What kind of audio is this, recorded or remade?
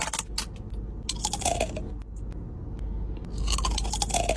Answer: recorded